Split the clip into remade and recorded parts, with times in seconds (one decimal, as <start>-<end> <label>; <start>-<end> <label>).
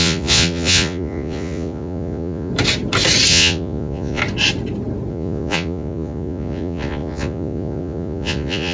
0.0-2.5 remade; 2.5-3.3 recorded; 3.3-4.2 remade; 4.2-5.1 recorded; 5.1-8.7 remade